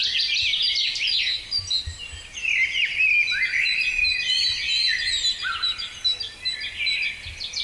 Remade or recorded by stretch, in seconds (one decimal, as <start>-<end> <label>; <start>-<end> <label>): 0.0-0.6 recorded; 0.6-5.2 remade; 5.2-7.6 recorded